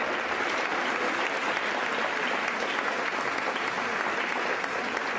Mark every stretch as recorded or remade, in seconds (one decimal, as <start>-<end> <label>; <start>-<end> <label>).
0.0-5.2 recorded